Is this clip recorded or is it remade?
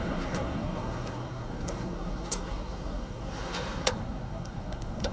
remade